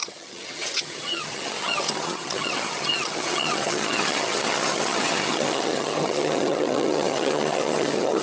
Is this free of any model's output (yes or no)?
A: no